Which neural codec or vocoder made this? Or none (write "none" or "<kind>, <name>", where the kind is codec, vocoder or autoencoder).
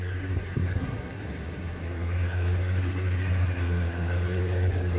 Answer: codec, SNAC